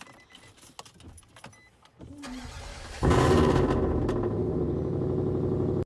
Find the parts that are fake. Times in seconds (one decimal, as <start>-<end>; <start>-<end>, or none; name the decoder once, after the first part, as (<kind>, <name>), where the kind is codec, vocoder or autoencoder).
2.7-3.5 (codec, DAC)